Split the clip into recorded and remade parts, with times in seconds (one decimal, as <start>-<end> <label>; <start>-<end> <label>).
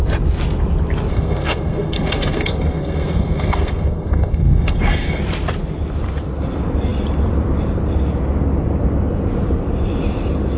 0.0-1.1 recorded; 1.1-5.2 remade; 5.2-10.6 recorded